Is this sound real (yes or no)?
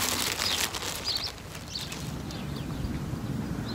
yes